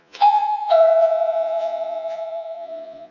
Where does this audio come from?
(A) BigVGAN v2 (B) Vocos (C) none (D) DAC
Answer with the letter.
B